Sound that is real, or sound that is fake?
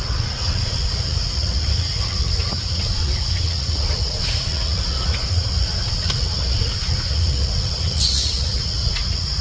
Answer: fake